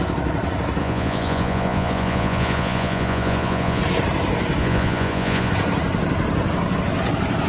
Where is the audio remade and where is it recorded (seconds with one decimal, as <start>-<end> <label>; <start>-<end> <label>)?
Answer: 0.0-0.8 recorded; 0.8-3.8 remade; 3.8-4.6 recorded; 4.6-5.5 remade; 5.5-7.5 recorded